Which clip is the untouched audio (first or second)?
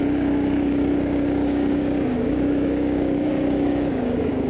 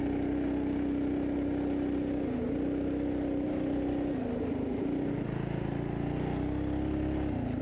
second